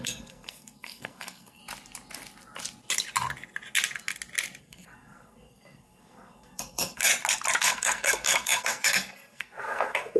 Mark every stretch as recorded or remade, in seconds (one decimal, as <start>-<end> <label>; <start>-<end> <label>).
0.0-1.6 remade; 1.6-4.6 recorded; 4.6-7.1 remade; 7.1-7.6 recorded; 7.6-10.2 remade